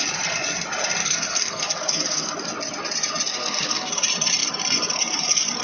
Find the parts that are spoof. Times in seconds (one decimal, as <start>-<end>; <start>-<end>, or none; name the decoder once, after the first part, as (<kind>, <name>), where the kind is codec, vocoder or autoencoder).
1.0-2.3 (codec, SNAC); 3.3-3.9